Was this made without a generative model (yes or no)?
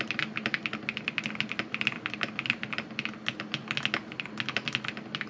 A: yes